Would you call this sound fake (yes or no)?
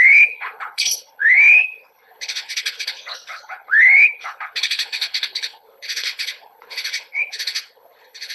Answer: yes